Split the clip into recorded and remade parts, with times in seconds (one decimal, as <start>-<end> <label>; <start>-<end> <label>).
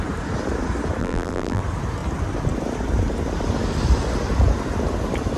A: 0.0-1.0 recorded; 1.0-1.6 remade; 1.6-5.4 recorded